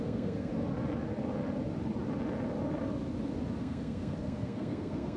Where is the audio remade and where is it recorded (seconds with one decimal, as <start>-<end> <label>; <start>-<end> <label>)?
0.0-0.5 remade; 0.5-3.6 recorded; 3.6-5.2 remade